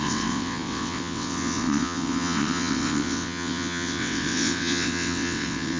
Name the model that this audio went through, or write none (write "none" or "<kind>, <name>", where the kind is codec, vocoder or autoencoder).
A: vocoder, WaveNeXt